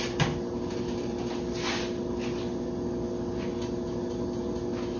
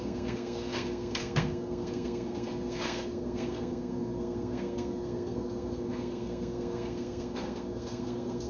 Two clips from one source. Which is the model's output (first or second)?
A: second